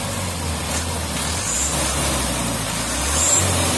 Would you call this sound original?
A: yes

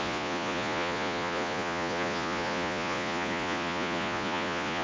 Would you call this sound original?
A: no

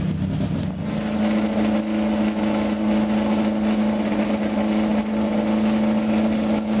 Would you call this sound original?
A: yes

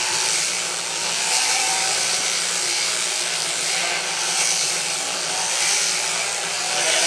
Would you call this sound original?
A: no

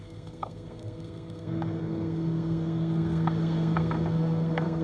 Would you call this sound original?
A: no